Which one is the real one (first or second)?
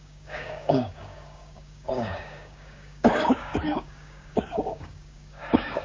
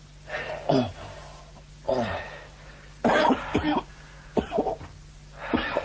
second